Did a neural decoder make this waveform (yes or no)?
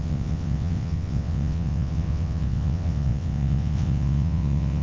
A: yes